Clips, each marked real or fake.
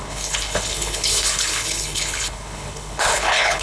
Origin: fake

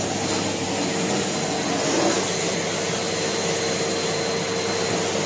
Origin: real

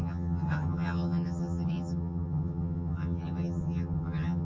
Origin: fake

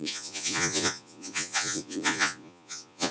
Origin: fake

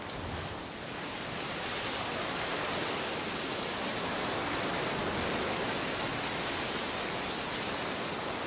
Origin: real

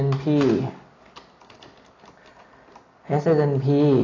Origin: real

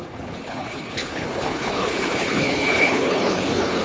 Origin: fake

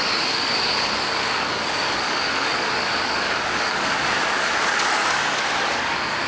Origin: fake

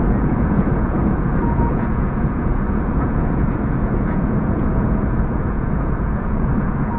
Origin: fake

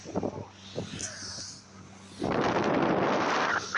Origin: real